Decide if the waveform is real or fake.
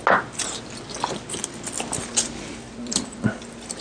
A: real